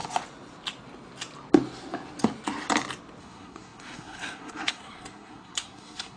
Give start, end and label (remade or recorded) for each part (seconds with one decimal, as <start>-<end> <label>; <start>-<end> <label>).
0.0-3.2 recorded; 3.2-6.2 remade